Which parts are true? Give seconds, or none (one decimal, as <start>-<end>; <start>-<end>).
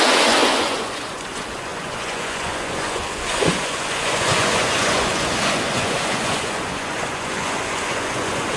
none